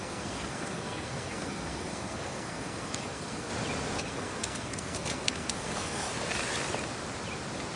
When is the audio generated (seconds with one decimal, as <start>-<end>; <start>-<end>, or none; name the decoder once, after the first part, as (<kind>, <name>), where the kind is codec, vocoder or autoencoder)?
0.0-3.5 (codec, SNAC); 4.0-6.1